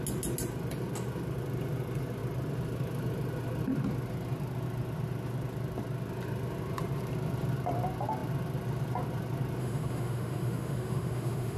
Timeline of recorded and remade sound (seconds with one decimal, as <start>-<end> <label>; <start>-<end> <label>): 0.0-9.6 recorded; 9.6-11.6 remade